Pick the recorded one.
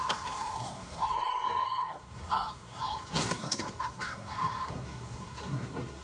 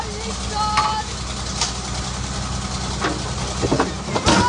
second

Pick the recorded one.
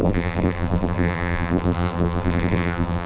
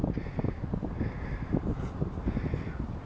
second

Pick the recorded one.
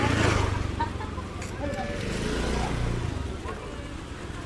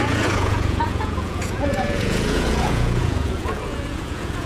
first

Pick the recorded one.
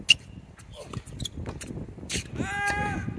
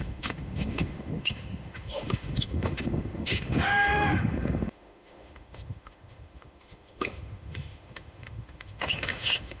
first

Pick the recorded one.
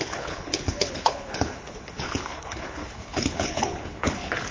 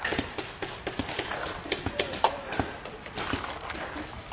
second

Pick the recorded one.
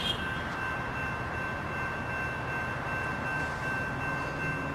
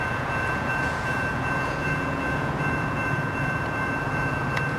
first